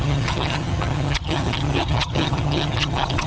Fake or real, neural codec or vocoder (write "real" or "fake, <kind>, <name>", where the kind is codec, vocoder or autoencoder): fake, vocoder, HiFi-GAN